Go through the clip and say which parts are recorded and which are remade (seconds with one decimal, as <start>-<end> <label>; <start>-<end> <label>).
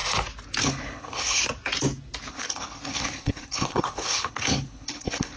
0.0-0.6 recorded; 0.6-1.4 remade; 1.4-2.3 recorded; 2.3-5.4 remade